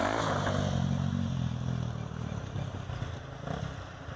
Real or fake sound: real